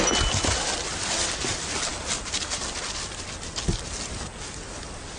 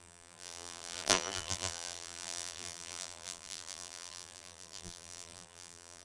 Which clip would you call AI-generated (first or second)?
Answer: second